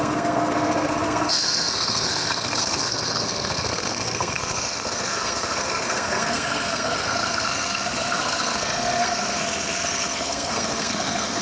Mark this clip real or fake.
fake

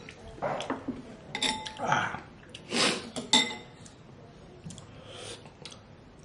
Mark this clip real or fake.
real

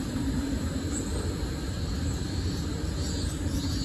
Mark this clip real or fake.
real